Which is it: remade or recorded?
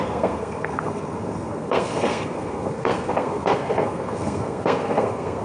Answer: remade